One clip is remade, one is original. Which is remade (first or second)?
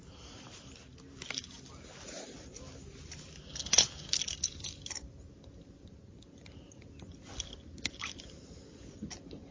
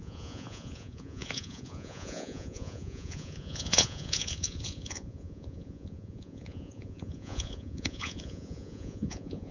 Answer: second